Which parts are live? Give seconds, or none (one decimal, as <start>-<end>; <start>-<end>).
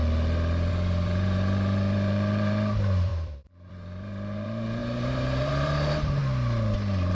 0.0-0.7; 6.2-7.1